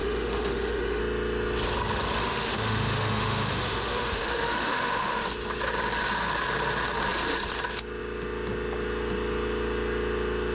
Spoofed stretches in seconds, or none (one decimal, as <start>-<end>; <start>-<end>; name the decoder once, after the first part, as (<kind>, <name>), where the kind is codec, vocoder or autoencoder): 0.0-1.0 (autoencoder, DAC-VAE); 2.2-5.3